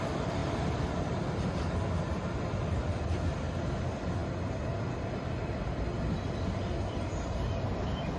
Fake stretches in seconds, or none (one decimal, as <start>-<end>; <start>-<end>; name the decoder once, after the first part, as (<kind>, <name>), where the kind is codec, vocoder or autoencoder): none